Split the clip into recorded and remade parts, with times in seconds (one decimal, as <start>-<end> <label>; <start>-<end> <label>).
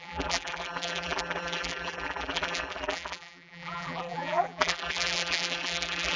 0.0-6.2 remade